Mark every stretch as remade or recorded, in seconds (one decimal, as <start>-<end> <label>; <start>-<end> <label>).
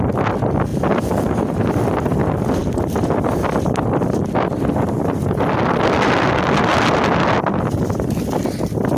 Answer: 0.0-0.7 recorded; 0.7-1.4 remade; 1.4-9.0 recorded